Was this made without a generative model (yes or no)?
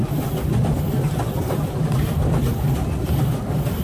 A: yes